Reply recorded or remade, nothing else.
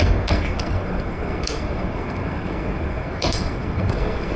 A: remade